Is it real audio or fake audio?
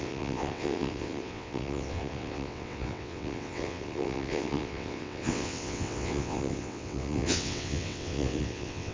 fake